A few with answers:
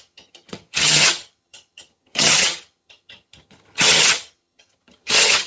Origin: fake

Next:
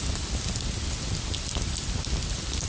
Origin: real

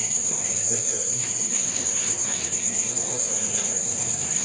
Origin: fake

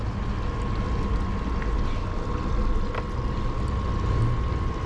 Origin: real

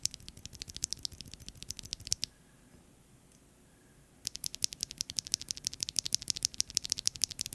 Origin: real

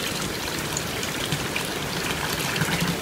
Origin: real